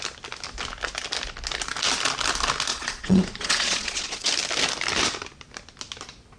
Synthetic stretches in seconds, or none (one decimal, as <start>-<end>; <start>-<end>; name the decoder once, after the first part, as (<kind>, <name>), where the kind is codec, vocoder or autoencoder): 2.7-4.3 (vocoder, Vocos)